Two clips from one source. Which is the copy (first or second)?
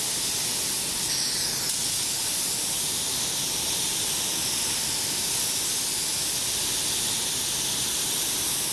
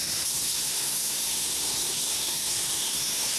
second